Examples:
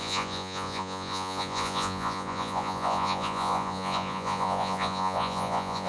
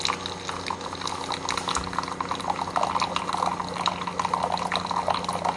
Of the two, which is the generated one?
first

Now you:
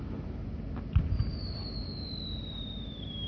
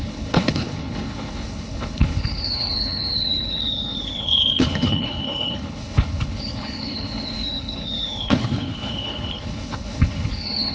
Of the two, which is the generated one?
second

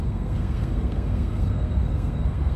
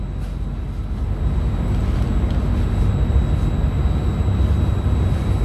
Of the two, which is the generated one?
first